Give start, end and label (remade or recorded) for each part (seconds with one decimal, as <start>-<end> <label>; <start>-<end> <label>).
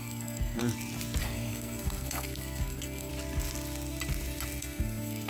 0.0-0.6 remade; 0.6-1.2 recorded; 1.2-3.1 remade; 3.1-4.6 recorded; 4.6-5.3 remade